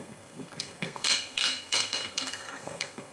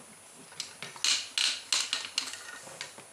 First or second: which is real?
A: second